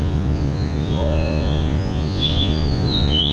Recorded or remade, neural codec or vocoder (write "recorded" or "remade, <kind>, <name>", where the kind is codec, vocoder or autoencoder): remade, vocoder, Vocos